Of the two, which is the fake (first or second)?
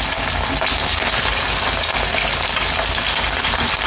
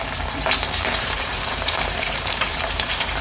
second